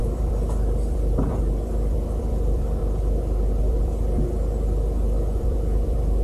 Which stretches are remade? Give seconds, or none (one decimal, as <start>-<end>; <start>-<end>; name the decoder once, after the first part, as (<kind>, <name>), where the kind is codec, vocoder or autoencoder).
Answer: 0.0-2.8 (vocoder, BigVGAN v2); 3.6-6.2